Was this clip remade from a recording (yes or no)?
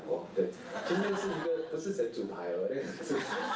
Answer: no